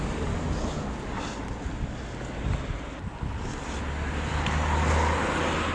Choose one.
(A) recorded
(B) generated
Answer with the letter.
A